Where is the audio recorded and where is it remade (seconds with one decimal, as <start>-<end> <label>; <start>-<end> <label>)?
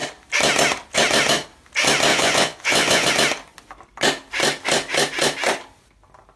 0.0-2.1 recorded; 2.1-3.1 remade; 3.1-6.4 recorded